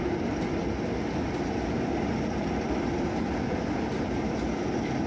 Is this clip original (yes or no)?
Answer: yes